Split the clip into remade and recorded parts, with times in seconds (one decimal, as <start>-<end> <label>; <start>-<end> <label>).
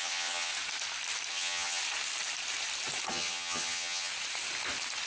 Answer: 0.0-0.5 remade; 0.5-1.3 recorded; 1.3-1.8 remade; 1.8-3.1 recorded; 3.1-4.1 remade; 4.1-5.1 recorded